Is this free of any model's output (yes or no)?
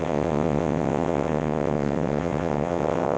no